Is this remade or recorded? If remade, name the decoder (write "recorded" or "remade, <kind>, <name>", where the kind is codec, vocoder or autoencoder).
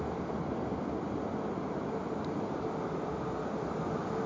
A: remade, vocoder, BigVGAN v2